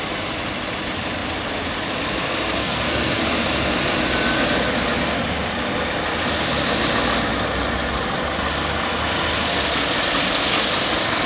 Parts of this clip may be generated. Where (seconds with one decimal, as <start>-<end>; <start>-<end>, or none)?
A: 2.6-3.2